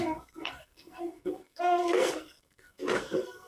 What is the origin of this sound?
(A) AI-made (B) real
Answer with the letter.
A